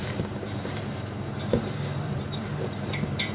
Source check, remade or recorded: remade